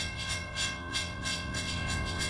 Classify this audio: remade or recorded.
remade